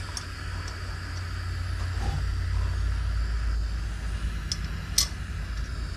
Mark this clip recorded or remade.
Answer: recorded